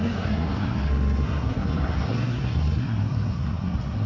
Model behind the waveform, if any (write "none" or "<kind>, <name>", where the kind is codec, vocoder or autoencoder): codec, SNAC